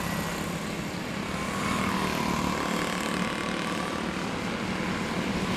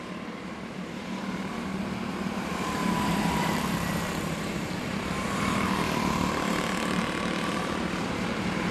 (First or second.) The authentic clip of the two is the first